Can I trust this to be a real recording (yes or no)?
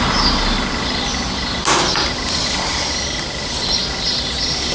yes